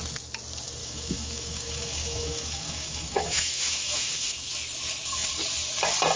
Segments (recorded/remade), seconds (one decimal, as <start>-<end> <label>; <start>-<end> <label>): 0.0-0.8 recorded; 0.8-4.5 remade; 4.5-6.2 recorded